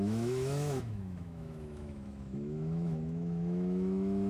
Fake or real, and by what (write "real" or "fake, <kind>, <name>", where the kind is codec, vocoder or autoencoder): fake, autoencoder, DAC-VAE